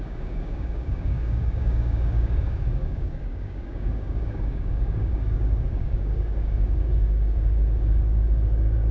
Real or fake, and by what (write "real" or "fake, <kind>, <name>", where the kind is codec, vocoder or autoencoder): fake, codec, DAC